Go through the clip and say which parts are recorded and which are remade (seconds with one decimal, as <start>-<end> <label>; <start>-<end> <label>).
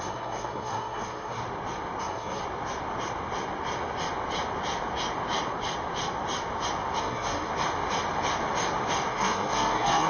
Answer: 0.0-1.4 remade; 1.4-2.0 recorded; 2.0-2.4 remade; 2.4-7.0 recorded; 7.0-7.5 remade; 7.5-9.1 recorded; 9.1-10.1 remade